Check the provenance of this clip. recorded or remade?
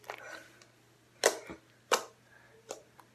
recorded